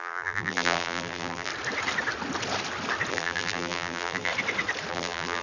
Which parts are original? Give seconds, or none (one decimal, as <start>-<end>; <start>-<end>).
1.5-3.1; 4.3-4.9